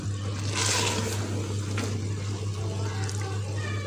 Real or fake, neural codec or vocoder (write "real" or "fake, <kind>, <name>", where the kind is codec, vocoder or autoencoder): real